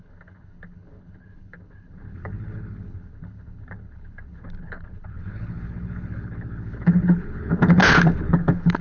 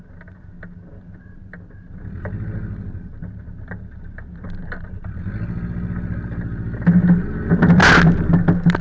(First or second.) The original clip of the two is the second